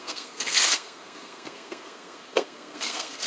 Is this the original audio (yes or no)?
no